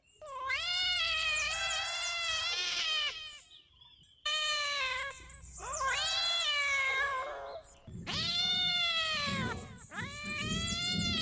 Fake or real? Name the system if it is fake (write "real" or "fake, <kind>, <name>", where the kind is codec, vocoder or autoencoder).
fake, vocoder, BigVGAN v2